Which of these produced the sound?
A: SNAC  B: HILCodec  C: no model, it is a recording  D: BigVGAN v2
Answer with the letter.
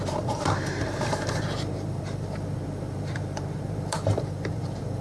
D